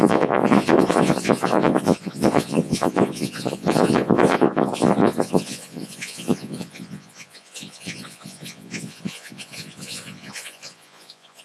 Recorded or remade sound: remade